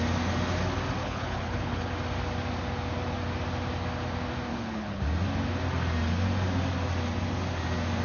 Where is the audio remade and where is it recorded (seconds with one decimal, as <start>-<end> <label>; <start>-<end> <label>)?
0.0-1.0 recorded; 1.0-1.9 remade; 1.9-4.5 recorded; 4.5-5.0 remade; 5.0-8.0 recorded